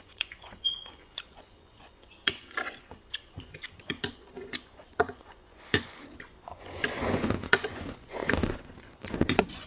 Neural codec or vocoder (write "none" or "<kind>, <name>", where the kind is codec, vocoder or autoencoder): vocoder, Vocos